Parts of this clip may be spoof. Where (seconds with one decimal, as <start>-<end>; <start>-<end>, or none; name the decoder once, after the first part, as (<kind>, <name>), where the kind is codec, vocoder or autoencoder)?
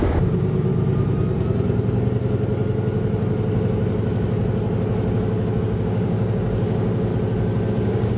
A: 0.0-0.7 (codec, DAC); 5.6-7.1; 7.7-8.2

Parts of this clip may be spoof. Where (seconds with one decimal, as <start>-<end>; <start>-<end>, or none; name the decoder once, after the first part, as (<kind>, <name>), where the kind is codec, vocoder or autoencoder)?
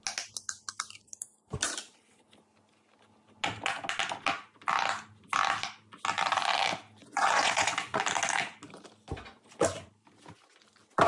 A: 7.0-8.0 (vocoder, Vocos)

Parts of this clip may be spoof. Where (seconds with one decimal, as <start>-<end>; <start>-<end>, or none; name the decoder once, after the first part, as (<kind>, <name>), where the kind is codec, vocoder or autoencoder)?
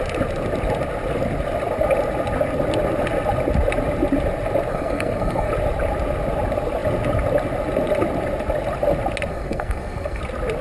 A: 4.7-5.5 (codec, SNAC); 9.3-10.2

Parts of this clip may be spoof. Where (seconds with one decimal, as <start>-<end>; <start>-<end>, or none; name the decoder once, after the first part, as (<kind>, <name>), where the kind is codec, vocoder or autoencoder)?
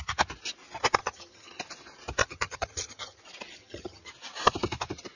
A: 1.0-1.6 (vocoder, HiFi-GAN); 2.2-3.2; 3.6-4.1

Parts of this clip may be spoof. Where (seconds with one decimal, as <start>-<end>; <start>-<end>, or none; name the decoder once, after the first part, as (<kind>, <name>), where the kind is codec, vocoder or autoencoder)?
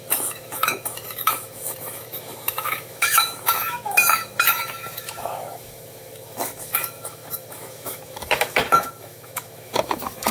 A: 0.0-10.3 (autoencoder, DAC-VAE)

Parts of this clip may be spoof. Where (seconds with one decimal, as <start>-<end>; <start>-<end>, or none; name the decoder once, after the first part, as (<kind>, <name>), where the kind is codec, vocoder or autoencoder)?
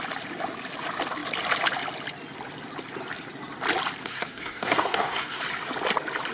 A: 4.1-5.4 (codec, SNAC)